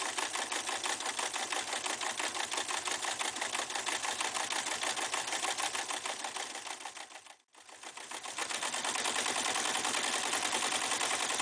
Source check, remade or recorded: recorded